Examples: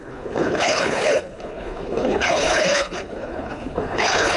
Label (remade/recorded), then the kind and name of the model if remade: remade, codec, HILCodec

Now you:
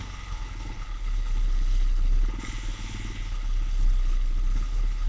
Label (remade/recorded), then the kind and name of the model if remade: remade, codec, HILCodec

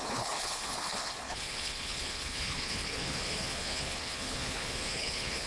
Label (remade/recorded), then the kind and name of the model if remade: remade, codec, HILCodec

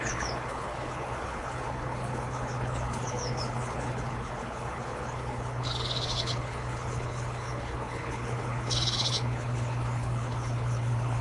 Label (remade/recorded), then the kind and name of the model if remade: remade, codec, HILCodec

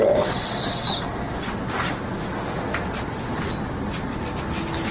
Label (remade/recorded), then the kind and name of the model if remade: recorded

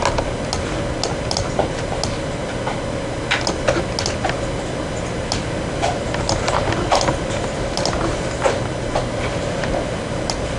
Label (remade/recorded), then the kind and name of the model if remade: recorded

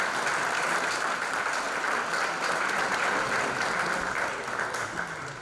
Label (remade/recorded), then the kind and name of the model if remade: recorded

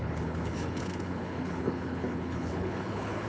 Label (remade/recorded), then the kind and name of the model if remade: remade, codec, HILCodec